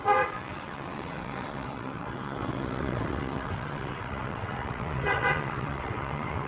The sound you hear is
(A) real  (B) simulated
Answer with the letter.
B